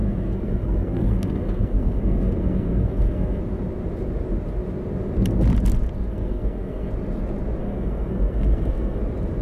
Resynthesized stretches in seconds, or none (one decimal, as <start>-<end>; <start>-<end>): 0.0-3.4; 6.1-6.9; 7.6-9.0

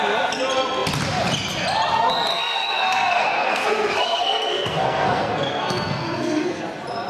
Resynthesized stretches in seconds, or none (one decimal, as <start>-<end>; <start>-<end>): 2.3-6.6

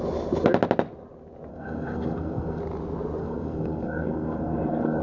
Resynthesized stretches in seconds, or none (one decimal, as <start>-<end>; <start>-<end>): 1.5-2.6; 3.2-5.0

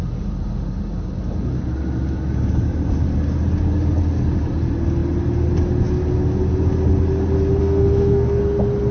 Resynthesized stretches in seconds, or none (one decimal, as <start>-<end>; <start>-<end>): 7.6-8.4

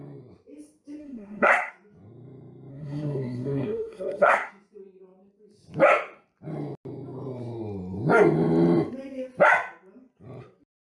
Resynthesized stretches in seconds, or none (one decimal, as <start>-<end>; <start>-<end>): 1.0-1.7; 2.7-4.5

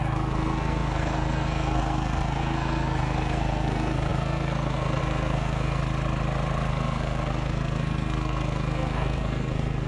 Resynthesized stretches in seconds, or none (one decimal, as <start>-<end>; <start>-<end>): 0.0-5.8; 6.7-9.9

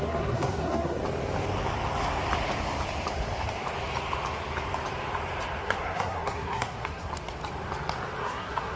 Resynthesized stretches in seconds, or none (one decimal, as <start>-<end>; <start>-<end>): 0.0-1.0; 5.6-7.1; 8.2-8.8